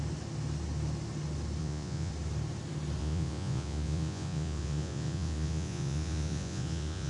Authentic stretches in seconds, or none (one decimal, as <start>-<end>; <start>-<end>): 0.0-1.6; 2.1-3.0